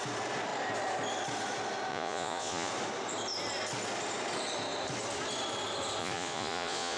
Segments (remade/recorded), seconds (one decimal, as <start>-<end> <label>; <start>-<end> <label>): 0.0-1.9 recorded; 1.9-2.7 remade; 2.7-6.0 recorded; 6.0-7.0 remade